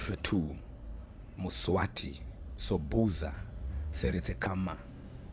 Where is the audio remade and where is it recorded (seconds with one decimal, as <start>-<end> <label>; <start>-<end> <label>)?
0.0-0.6 remade; 0.6-1.0 recorded; 1.0-4.2 remade; 4.2-5.3 recorded